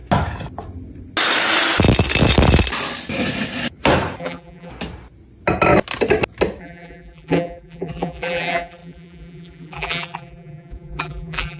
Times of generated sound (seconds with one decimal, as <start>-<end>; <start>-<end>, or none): 4.2-4.7; 6.6-11.6